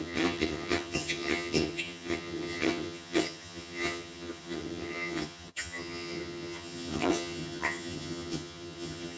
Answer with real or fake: fake